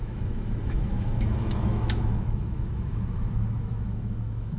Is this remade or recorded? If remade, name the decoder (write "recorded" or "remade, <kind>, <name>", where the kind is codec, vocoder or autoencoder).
remade, autoencoder, DAC-VAE